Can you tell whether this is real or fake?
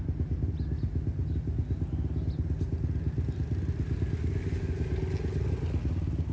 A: real